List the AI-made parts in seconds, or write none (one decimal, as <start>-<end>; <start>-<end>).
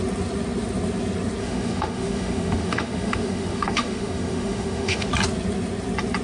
1.4-5.1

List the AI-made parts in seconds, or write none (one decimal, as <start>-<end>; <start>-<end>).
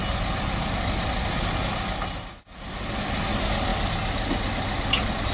none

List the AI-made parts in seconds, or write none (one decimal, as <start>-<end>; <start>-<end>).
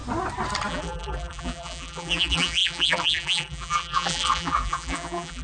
0.7-5.4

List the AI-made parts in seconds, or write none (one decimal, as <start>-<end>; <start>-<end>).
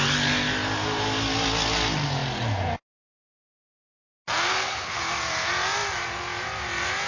4.5-5.0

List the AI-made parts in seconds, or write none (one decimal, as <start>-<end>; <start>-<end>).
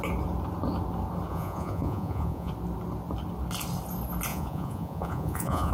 1.3-2.5; 4.3-5.7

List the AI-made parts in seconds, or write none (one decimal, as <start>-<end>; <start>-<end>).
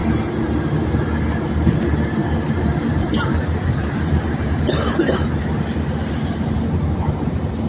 2.2-6.5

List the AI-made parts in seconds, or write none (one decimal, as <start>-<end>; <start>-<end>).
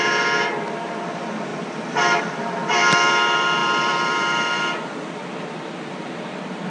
1.5-2.2; 3.6-6.7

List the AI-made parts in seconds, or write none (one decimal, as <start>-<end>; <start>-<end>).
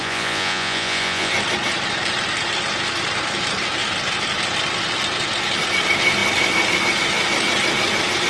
0.0-1.3